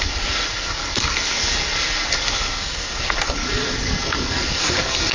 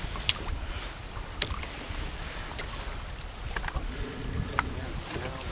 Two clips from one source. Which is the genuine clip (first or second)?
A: second